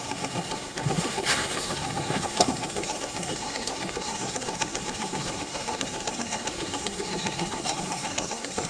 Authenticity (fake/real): fake